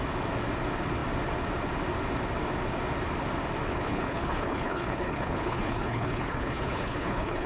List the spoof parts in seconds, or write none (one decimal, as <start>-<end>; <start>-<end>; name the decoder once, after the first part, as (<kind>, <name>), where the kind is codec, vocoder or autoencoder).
3.7-7.5 (codec, HILCodec)